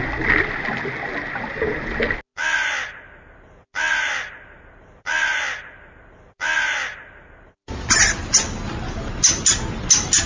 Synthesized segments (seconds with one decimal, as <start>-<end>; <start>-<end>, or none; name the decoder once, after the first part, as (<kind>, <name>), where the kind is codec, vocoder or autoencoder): none